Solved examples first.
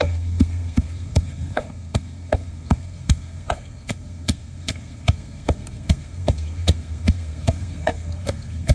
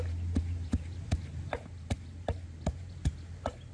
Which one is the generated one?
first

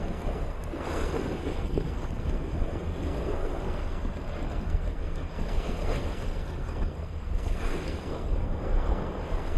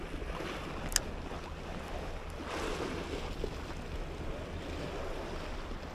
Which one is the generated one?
first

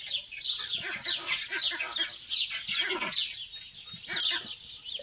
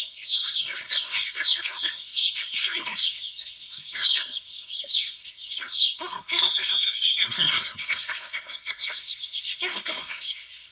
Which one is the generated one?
second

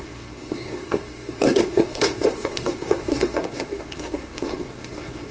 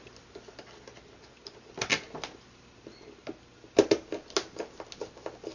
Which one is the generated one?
first